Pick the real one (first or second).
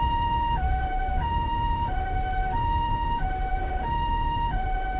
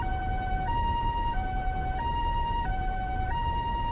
second